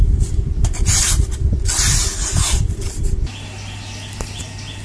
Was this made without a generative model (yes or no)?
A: yes